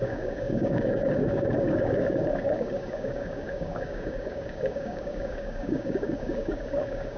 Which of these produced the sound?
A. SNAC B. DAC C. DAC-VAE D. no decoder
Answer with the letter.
B